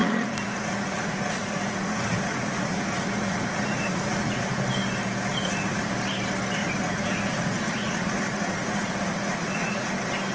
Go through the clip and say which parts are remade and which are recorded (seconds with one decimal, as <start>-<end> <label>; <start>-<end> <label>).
0.0-4.6 remade; 4.6-5.3 recorded; 5.3-5.9 remade; 5.9-6.6 recorded; 6.6-9.9 remade; 9.9-10.3 recorded